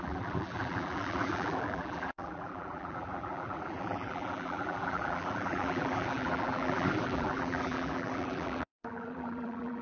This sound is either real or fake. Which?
fake